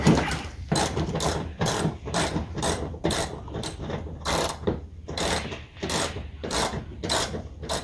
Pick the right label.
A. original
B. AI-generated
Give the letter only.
B